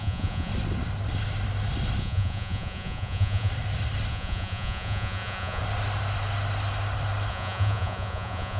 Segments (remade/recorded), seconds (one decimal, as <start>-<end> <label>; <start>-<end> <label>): 0.0-0.5 remade; 0.5-2.0 recorded; 2.0-3.5 remade; 3.5-4.1 recorded; 4.1-5.6 remade; 5.6-7.3 recorded; 7.3-8.6 remade